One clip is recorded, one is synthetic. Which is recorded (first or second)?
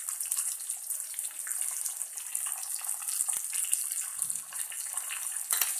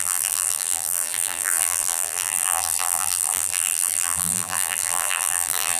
first